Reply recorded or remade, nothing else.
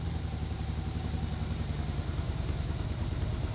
remade